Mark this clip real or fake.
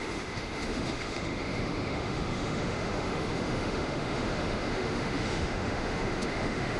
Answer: fake